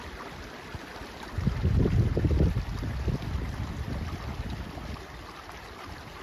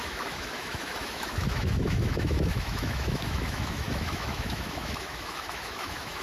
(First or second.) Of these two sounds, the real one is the first